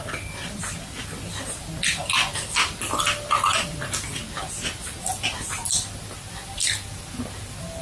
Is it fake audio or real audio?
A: real